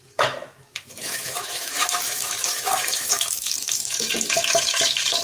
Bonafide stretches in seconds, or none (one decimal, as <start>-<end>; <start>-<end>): none

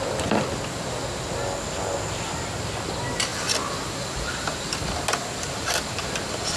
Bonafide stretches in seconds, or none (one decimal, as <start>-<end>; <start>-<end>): 0.0-6.6